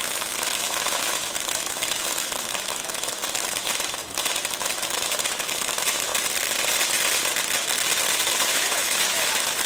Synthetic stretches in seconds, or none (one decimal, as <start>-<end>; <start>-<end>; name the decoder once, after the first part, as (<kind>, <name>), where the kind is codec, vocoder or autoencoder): 0.0-6.1 (autoencoder, DAC-VAE); 8.5-9.7